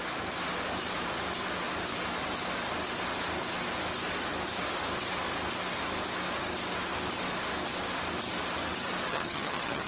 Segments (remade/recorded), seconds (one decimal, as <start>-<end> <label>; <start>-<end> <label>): 0.0-9.1 recorded; 9.1-9.9 remade